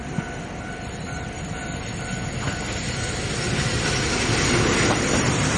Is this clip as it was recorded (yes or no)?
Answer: yes